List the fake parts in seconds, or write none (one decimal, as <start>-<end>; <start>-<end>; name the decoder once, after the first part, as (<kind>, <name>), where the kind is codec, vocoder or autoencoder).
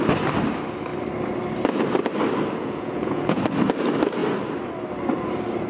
2.6-3.4 (vocoder, Vocos)